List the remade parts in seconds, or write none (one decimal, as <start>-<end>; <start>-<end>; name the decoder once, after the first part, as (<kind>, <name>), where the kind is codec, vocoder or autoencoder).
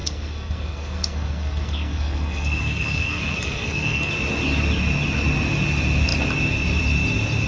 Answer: 0.0-4.1 (codec, SNAC)